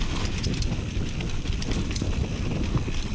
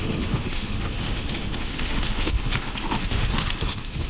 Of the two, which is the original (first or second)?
first